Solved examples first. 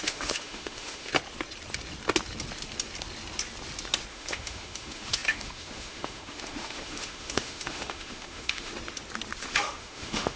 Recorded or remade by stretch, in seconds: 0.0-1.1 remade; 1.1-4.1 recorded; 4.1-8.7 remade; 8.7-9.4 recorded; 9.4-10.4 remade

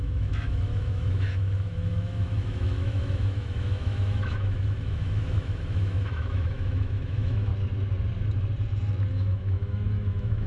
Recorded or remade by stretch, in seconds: 0.0-7.5 remade; 7.5-9.1 recorded; 9.1-10.5 remade